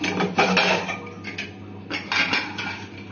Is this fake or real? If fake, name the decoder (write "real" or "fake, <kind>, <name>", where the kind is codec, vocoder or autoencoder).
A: real